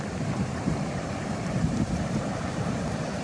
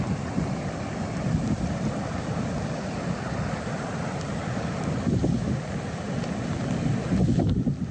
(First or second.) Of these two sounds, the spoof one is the first